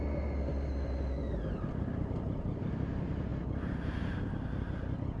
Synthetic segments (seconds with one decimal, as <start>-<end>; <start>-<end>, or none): 1.2-2.6